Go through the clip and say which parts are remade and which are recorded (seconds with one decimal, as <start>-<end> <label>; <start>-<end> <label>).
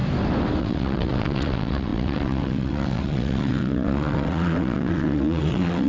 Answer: 0.0-0.6 recorded; 0.6-5.9 remade